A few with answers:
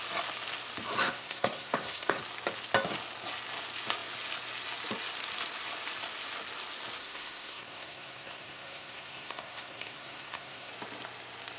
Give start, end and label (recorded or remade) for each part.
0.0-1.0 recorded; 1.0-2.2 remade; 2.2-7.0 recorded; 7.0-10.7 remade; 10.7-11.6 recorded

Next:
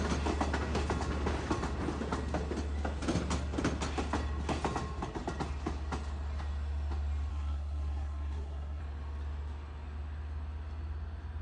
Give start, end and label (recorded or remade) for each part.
0.0-7.3 recorded; 7.3-8.8 remade; 8.8-11.4 recorded

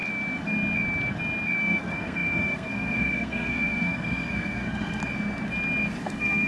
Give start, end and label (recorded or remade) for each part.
0.0-1.6 recorded; 1.6-5.0 remade; 5.0-6.0 recorded; 6.0-6.5 remade

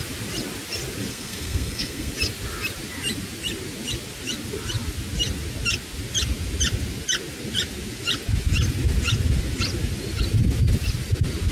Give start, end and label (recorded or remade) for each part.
0.0-1.1 recorded; 1.1-2.1 remade; 2.1-11.5 recorded

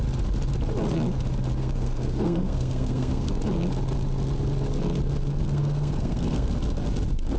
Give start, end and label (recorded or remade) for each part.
0.0-1.6 recorded; 1.6-3.4 remade; 3.4-5.3 recorded; 5.3-6.5 remade; 6.5-7.4 recorded

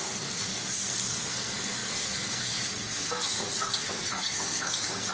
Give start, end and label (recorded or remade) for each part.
0.0-5.1 remade